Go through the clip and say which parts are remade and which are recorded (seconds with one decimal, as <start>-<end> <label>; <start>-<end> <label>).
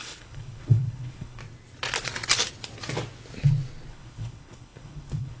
0.0-1.4 remade; 1.4-3.9 recorded; 3.9-5.4 remade